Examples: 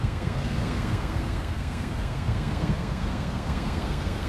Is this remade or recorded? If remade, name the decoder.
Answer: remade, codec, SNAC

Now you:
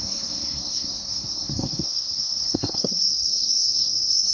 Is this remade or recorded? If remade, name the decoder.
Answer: remade, codec, SNAC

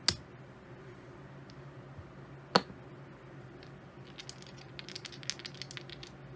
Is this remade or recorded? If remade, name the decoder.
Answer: recorded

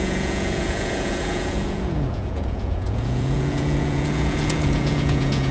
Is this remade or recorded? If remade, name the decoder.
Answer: remade, vocoder, Vocos